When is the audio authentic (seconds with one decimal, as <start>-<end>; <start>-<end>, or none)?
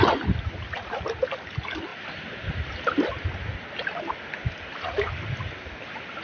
0.0-6.2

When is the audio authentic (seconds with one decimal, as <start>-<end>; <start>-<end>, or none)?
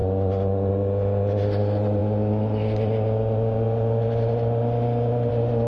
0.0-5.7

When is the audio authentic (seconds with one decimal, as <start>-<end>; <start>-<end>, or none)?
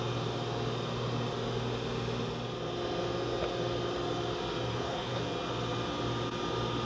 0.0-4.7; 5.2-6.9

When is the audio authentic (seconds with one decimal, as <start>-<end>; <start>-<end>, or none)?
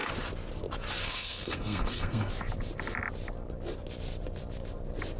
0.0-1.0; 2.3-5.2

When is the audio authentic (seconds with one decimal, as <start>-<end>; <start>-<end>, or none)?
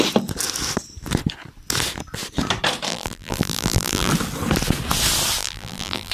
0.0-2.9; 4.1-5.4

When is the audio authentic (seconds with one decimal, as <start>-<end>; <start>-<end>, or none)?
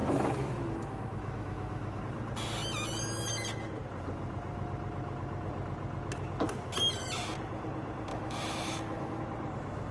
2.0-8.1; 9.2-9.9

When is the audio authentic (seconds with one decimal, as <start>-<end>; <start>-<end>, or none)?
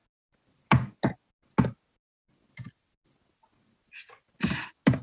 0.0-5.0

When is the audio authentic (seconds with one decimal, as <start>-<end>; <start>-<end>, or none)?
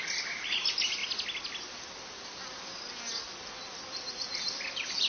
0.0-5.1